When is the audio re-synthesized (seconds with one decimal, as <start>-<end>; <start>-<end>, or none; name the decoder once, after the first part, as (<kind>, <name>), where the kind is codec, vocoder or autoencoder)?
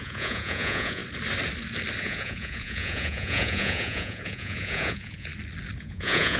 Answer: 0.0-1.0 (vocoder, Vocos); 2.0-5.3; 5.8-6.4